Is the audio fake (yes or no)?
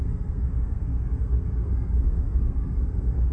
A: yes